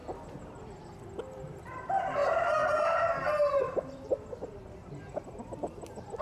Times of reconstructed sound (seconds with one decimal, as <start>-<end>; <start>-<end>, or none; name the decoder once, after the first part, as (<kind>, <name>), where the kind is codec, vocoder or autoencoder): 1.2-6.2 (vocoder, BigVGAN v2)